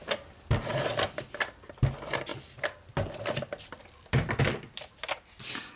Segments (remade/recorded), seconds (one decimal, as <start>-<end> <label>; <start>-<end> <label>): 0.0-5.8 recorded